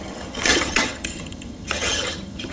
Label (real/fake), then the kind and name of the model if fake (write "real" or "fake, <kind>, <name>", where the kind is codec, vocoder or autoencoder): fake, vocoder, HiFi-GAN